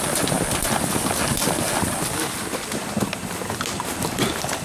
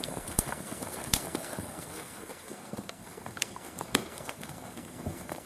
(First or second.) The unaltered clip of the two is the first